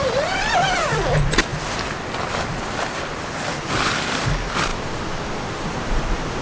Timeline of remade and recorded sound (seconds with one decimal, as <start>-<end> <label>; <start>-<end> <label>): 0.0-1.5 recorded; 1.5-4.3 remade; 4.3-6.4 recorded

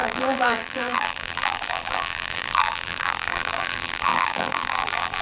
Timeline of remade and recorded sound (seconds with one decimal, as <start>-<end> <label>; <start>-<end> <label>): 0.0-5.2 remade